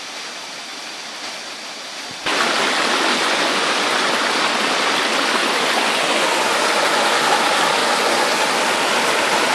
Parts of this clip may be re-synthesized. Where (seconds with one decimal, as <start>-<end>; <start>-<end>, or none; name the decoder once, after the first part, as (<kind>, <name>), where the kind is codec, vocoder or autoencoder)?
3.1-4.1 (vocoder, Vocos); 5.4-7.3; 7.8-8.4